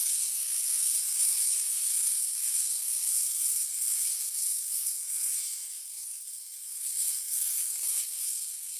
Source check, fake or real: fake